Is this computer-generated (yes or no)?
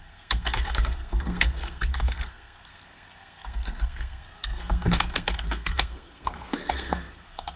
yes